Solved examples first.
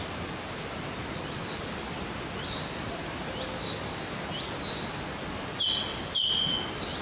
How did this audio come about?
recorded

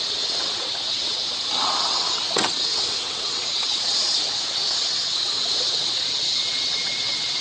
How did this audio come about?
remade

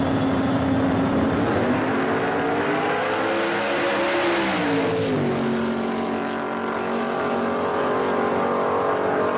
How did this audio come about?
recorded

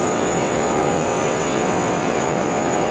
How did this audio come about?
remade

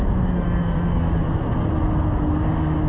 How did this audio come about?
recorded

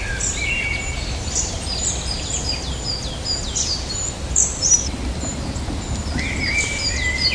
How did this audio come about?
recorded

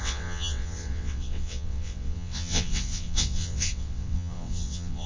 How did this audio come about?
remade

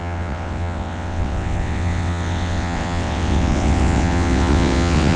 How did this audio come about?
remade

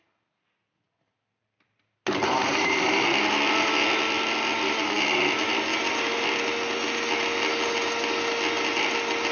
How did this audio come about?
recorded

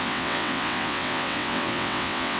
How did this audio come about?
remade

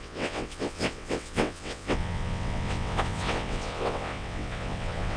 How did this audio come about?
remade